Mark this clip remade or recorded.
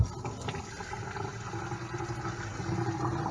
recorded